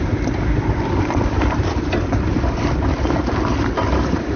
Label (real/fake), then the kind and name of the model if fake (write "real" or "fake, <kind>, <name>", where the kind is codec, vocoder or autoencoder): real